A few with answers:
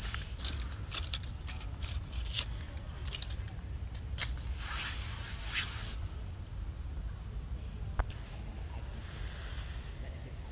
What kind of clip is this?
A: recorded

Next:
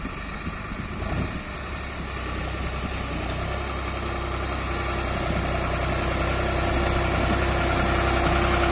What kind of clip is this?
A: recorded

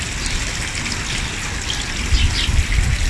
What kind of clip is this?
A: recorded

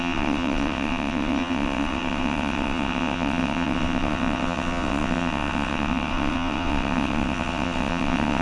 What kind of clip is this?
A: remade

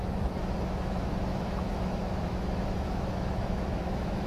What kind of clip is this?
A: remade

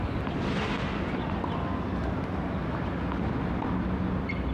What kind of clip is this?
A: recorded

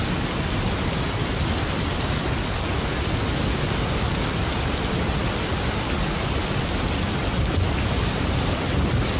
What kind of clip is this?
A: recorded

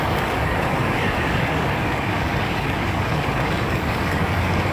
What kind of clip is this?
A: remade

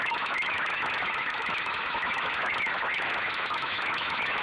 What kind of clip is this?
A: remade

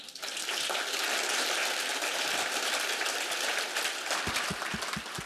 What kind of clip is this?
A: recorded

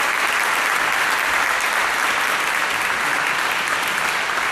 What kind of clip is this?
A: recorded